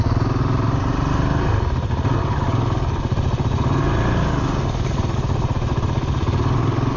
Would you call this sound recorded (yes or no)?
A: yes